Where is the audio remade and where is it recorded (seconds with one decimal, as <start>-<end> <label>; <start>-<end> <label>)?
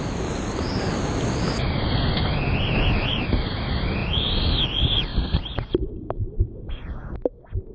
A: 0.0-5.1 recorded; 5.1-6.6 remade; 6.6-7.7 recorded